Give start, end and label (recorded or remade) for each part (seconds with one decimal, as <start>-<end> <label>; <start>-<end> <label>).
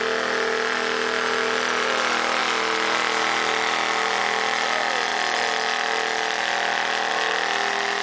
0.0-8.0 recorded